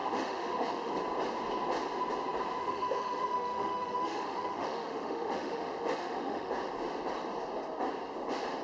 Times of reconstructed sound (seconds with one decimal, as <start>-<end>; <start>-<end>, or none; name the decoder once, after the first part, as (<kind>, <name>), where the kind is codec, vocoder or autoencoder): 0.0-0.9 (autoencoder, DAC-VAE); 2.6-6.5